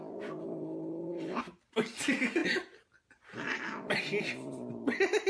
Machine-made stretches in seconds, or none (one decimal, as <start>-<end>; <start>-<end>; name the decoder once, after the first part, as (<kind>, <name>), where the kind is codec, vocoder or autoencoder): 0.4-1.4 (codec, HILCodec)